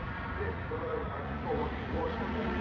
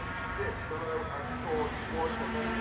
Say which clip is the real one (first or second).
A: second